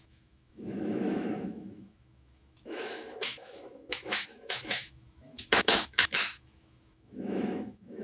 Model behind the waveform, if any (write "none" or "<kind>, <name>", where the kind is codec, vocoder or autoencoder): autoencoder, DAC-VAE